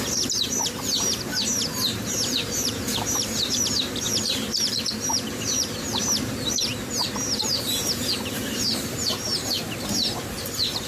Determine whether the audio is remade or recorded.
remade